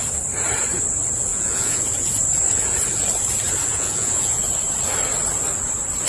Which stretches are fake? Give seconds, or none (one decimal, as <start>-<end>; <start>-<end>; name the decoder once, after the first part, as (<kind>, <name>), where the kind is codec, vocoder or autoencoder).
1.3-1.8 (vocoder, Vocos); 3.7-4.4